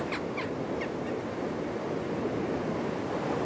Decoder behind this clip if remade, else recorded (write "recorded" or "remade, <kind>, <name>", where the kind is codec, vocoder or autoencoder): recorded